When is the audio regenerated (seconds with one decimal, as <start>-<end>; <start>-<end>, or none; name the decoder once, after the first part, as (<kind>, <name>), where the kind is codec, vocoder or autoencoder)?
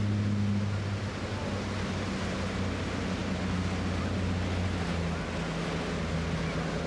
none